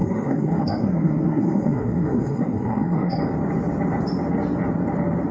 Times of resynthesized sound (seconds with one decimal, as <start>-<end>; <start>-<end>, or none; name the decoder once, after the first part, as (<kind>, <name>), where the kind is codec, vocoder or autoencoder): 0.0-3.2 (codec, SNAC)